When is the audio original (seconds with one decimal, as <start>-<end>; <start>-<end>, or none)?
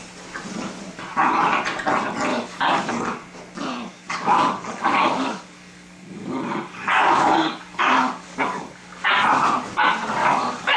0.0-2.3; 2.9-3.9; 9.1-10.2